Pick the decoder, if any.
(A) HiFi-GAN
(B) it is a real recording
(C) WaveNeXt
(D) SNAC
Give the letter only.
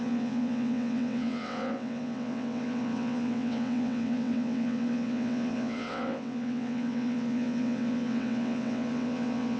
C